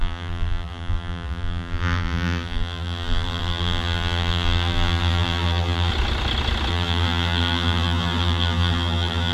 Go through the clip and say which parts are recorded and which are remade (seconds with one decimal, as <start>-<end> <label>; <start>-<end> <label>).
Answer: 0.0-5.9 remade; 5.9-6.7 recorded; 6.7-9.3 remade